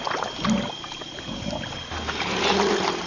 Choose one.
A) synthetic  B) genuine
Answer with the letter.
B